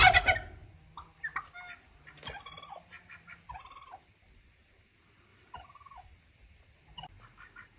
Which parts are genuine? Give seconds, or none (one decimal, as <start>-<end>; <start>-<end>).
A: 0.0-5.3; 6.1-7.8